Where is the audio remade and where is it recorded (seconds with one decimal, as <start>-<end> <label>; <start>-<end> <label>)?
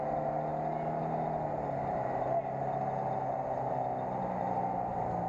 0.0-5.3 recorded